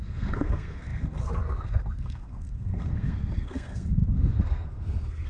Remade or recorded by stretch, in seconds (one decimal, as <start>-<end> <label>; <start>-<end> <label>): 0.0-5.3 remade